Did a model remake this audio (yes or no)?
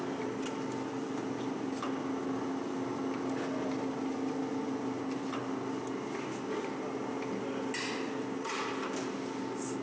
no